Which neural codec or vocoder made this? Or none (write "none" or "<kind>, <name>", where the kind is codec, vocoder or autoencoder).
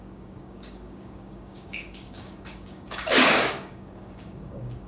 codec, DAC